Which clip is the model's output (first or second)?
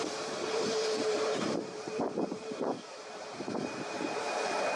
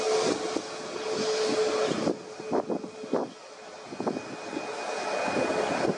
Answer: first